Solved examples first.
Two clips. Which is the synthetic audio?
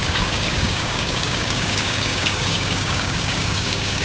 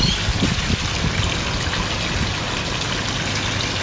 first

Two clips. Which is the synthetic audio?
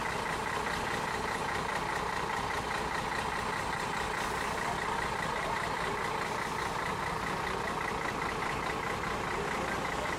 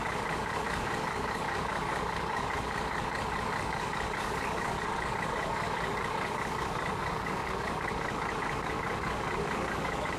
second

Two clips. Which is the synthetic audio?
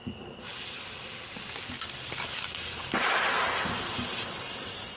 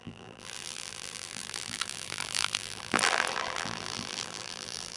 second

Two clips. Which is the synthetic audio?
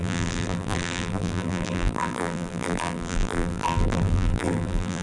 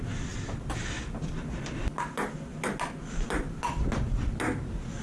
first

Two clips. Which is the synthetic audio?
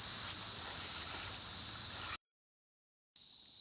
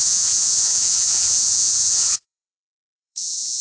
second